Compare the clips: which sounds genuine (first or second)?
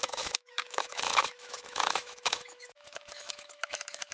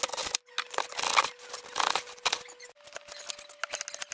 second